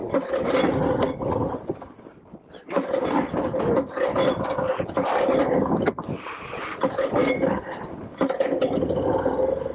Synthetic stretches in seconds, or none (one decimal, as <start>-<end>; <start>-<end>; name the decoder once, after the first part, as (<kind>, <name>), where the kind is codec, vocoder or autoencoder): none